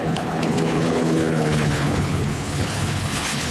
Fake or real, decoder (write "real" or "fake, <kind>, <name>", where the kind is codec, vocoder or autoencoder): fake, codec, HILCodec